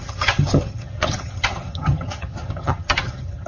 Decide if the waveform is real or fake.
fake